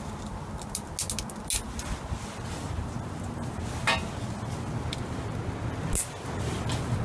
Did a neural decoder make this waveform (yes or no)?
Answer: no